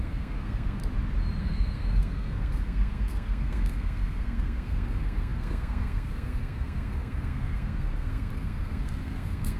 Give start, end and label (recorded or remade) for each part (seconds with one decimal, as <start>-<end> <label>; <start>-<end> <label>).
0.0-0.8 remade; 0.8-1.4 recorded; 1.4-9.6 remade